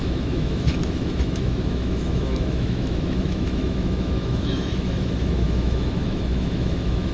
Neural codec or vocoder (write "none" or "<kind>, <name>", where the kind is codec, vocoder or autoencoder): autoencoder, DAC-VAE